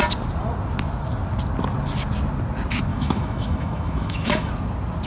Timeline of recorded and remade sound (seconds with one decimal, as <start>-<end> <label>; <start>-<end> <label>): 0.0-2.9 recorded; 2.9-4.5 remade; 4.5-5.1 recorded